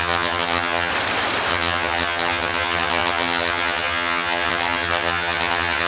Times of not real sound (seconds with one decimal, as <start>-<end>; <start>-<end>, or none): 0.0-0.9; 1.5-5.9